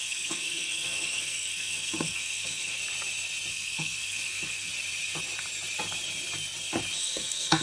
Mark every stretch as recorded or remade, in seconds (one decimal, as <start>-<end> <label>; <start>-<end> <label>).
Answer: 0.0-2.8 remade; 2.8-3.5 recorded; 3.5-4.7 remade; 4.7-7.0 recorded; 7.0-7.6 remade